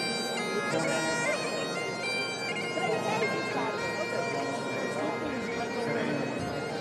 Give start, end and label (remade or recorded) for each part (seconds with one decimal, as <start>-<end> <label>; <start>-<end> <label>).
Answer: 0.0-6.8 recorded

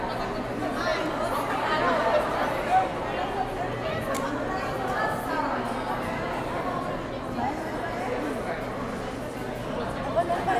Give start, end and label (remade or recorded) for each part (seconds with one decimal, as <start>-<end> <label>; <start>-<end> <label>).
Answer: 0.0-10.6 recorded

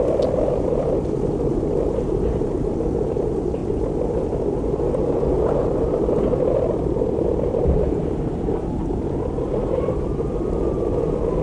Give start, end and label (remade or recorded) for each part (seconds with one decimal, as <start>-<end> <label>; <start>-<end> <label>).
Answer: 0.0-11.4 recorded

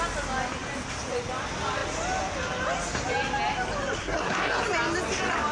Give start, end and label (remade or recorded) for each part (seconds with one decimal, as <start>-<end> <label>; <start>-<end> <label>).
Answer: 0.0-4.0 recorded; 4.0-4.6 remade; 4.6-5.5 recorded

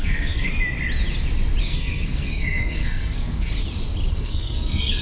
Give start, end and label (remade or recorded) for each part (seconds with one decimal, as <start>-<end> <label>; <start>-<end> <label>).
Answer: 0.0-0.5 remade; 0.5-1.6 recorded; 1.6-3.5 remade; 3.5-4.1 recorded; 4.1-5.0 remade

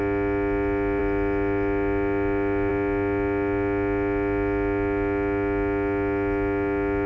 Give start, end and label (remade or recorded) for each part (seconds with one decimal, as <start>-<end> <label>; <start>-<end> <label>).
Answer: 0.0-7.1 recorded

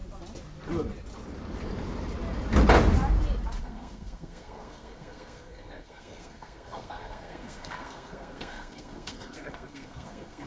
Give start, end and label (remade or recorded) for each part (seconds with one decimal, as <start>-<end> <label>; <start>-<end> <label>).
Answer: 0.0-3.6 recorded; 3.6-10.5 remade